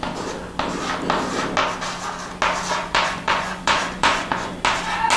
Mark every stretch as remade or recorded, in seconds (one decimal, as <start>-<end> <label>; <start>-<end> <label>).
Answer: 0.0-2.8 recorded; 2.8-4.5 remade; 4.5-5.2 recorded